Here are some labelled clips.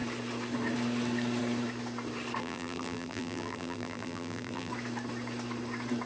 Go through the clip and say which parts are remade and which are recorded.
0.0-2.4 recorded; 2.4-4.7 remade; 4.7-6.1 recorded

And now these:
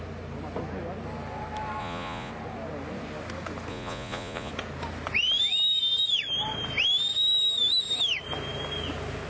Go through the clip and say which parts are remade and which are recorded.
0.0-1.8 recorded; 1.8-2.3 remade; 2.3-3.7 recorded; 3.7-4.5 remade; 4.5-9.3 recorded

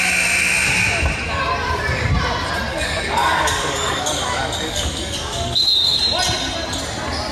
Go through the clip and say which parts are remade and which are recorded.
0.0-2.7 recorded; 2.7-6.0 remade; 6.0-7.3 recorded

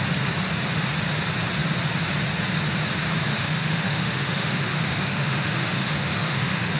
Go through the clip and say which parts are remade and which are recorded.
0.0-3.3 recorded; 3.3-6.8 remade

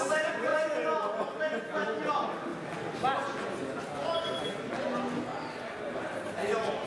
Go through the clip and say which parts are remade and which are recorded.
0.0-6.9 recorded

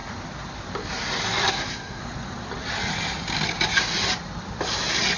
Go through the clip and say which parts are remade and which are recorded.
0.0-1.5 recorded; 1.5-2.0 remade; 2.0-5.2 recorded

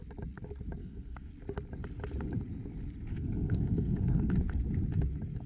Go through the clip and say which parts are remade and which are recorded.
0.0-0.8 recorded; 0.8-1.3 remade; 1.3-3.1 recorded; 3.1-4.3 remade; 4.3-5.5 recorded